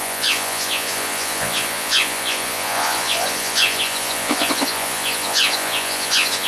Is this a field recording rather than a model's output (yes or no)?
no